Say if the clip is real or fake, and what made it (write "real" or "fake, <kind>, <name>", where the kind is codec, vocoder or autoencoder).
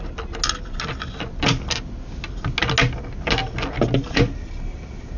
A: real